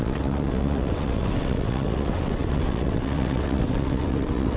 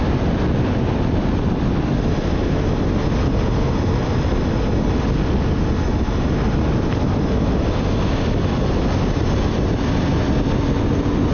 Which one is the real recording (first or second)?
second